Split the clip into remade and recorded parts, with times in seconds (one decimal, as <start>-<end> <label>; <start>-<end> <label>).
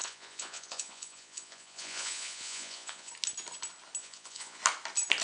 0.0-3.1 remade; 3.1-4.0 recorded; 4.0-4.6 remade; 4.6-5.2 recorded